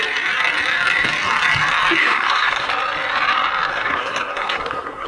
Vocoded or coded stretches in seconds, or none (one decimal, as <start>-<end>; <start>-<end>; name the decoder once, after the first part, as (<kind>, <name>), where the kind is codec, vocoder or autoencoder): 2.0-2.7 (codec, SNAC); 3.7-5.1